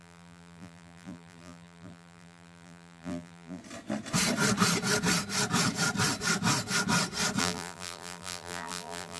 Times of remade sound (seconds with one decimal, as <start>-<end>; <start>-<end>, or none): 0.0-3.6; 7.4-9.2